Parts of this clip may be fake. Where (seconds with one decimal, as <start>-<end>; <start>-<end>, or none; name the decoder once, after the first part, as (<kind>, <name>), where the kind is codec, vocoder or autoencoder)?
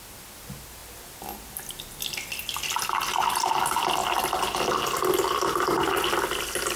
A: none